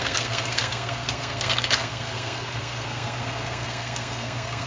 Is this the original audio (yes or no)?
no